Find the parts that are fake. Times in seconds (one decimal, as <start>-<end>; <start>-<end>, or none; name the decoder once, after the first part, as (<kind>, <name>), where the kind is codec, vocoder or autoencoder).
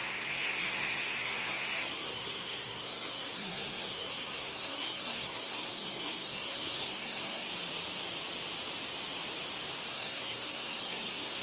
0.0-7.5 (codec, SNAC); 9.9-11.4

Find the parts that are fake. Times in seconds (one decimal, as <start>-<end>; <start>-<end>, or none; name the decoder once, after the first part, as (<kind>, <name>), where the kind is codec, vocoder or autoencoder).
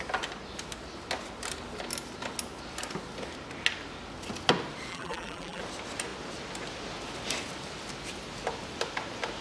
4.9-5.6 (vocoder, BigVGAN v2)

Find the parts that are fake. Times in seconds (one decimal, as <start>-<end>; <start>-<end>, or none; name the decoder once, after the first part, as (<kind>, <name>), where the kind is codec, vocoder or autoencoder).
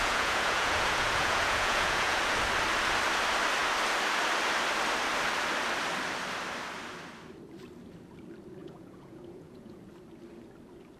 0.0-2.2 (vocoder, Vocos); 8.6-9.8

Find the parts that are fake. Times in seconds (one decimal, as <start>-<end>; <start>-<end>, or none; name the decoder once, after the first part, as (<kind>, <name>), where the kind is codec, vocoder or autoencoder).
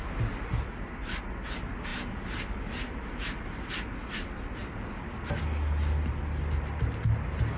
none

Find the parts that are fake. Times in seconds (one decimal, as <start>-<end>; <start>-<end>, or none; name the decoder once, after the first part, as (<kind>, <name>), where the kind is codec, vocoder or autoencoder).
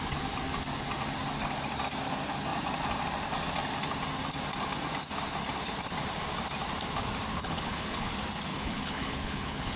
7.3-8.1 (codec, HILCodec); 8.5-9.8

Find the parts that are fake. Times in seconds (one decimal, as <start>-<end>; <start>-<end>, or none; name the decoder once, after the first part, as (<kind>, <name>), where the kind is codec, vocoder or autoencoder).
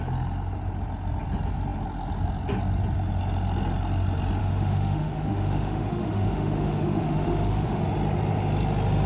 4.4-7.8 (autoencoder, DAC-VAE)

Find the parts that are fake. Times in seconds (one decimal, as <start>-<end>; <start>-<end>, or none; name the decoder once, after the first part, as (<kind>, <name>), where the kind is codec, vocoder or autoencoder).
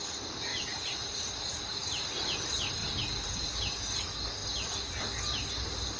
0.5-2.4 (vocoder, BigVGAN v2); 2.8-3.6